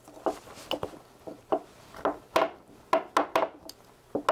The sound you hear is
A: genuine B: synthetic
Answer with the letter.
A